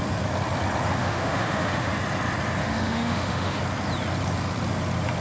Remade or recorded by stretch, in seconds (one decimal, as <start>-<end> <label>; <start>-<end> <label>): 0.0-1.0 recorded; 1.0-1.9 remade; 1.9-2.6 recorded; 2.6-3.6 remade; 3.6-5.2 recorded

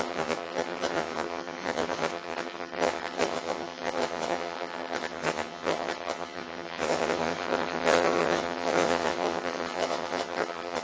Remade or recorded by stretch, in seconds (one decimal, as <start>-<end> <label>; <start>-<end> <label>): 0.0-10.8 remade

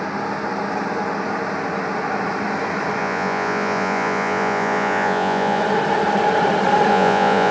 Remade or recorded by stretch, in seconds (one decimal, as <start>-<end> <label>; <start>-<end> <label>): 0.0-3.0 recorded; 3.0-5.6 remade; 5.6-6.9 recorded; 6.9-7.5 remade